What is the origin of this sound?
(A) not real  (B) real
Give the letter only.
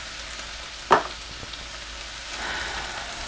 B